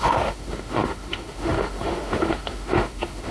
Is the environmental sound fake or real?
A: fake